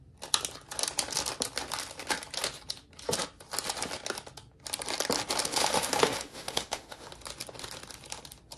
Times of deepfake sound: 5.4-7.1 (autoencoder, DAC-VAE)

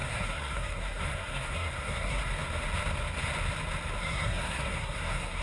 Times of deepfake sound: 0.0-2.2 (codec, SNAC); 4.0-5.4